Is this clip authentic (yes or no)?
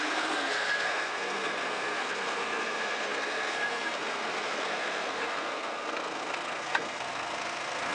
no